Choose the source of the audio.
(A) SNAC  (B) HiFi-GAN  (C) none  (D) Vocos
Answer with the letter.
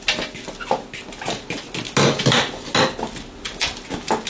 C